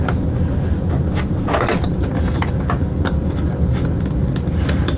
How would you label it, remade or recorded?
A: recorded